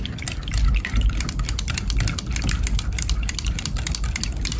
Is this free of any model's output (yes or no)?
yes